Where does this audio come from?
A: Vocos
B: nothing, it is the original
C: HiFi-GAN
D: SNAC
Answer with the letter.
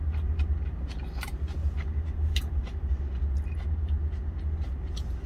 B